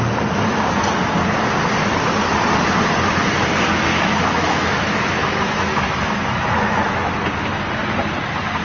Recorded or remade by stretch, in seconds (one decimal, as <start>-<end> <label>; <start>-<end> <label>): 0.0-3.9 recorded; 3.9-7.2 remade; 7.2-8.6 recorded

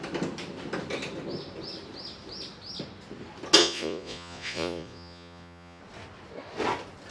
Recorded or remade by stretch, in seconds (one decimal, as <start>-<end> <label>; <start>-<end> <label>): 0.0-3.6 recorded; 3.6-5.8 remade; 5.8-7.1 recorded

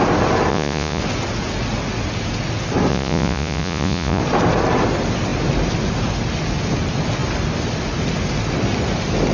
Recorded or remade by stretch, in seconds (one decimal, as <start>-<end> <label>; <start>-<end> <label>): 0.0-0.5 recorded; 0.5-1.0 remade; 1.0-2.9 recorded; 2.9-4.2 remade; 4.2-9.3 recorded

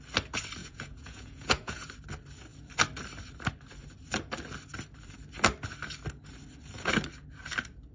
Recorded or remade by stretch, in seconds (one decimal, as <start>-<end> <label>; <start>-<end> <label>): 0.0-0.6 recorded; 0.6-1.9 remade; 1.9-7.9 recorded

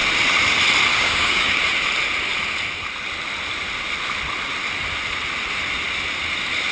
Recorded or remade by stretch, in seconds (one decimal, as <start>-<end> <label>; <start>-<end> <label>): 0.0-0.9 recorded; 0.9-1.6 remade; 1.6-6.7 recorded